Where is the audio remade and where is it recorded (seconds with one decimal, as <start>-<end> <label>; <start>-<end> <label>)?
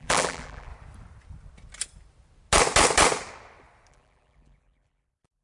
0.0-0.7 remade; 0.7-3.9 recorded; 3.9-5.4 remade